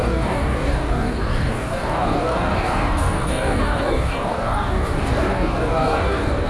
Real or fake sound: fake